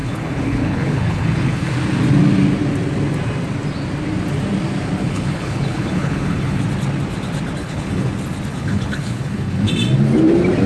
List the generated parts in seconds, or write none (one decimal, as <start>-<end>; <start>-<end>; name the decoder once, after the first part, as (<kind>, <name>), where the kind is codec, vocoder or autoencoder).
0.0-1.7 (codec, HILCodec); 5.0-6.6; 7.6-8.1; 8.5-9.7